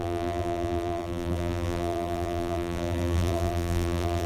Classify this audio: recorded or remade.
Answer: remade